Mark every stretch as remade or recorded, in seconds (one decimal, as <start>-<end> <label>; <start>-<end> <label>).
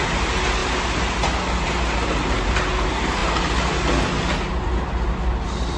0.0-5.8 recorded